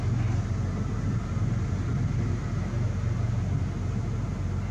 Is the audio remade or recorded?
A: recorded